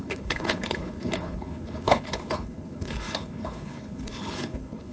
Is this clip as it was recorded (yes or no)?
no